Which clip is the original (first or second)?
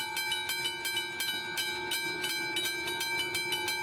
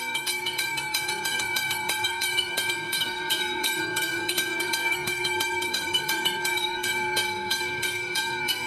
first